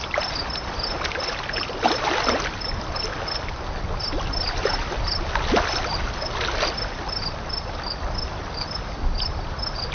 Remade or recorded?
recorded